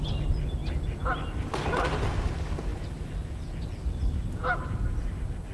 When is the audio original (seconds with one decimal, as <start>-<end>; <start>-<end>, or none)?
0.0-5.5